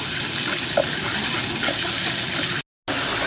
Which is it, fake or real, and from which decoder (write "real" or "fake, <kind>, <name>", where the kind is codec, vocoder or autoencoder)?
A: real